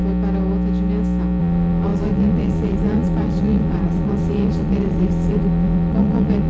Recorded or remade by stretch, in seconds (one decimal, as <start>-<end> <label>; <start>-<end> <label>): 0.0-1.4 recorded; 1.4-6.5 remade